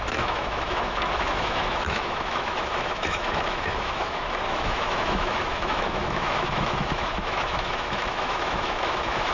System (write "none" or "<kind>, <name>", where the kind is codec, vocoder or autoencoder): autoencoder, DAC-VAE